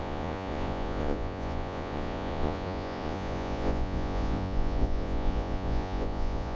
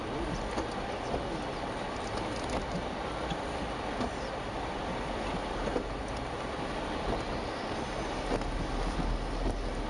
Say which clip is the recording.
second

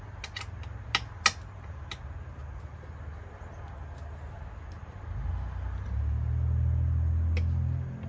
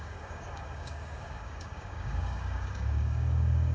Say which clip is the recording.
first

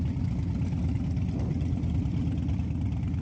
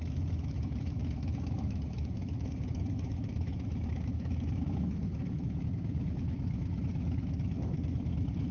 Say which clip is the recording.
first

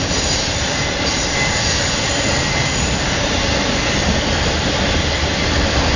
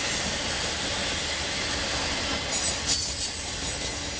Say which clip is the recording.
second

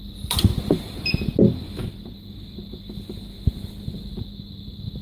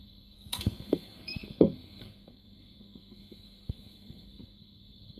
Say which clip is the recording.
first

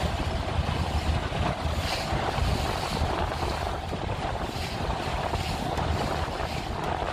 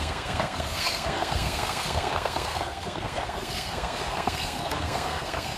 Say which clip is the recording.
first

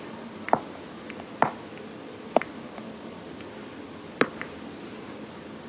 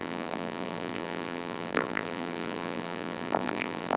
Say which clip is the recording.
first